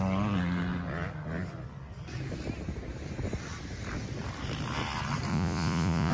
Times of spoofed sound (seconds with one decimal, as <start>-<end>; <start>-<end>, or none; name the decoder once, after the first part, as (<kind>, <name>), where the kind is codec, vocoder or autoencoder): 5.3-6.1 (vocoder, Vocos)